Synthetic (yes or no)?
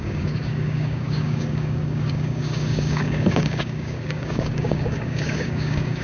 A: yes